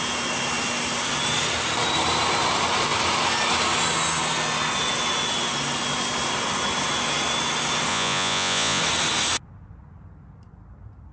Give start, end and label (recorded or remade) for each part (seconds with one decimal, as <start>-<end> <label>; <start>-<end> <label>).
0.0-7.9 recorded; 7.9-8.8 remade; 8.8-11.1 recorded